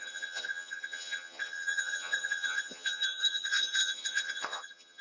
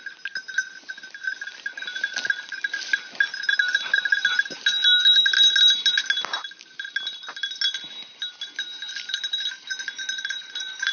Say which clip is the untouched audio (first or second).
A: second